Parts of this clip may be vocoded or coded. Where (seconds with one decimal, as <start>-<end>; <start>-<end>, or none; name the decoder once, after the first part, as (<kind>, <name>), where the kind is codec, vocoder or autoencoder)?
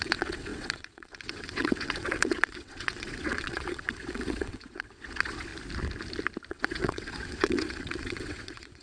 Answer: 0.0-5.5 (vocoder, WaveNeXt); 6.5-8.8